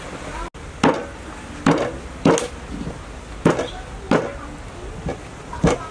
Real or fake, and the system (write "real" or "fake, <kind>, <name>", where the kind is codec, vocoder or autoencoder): real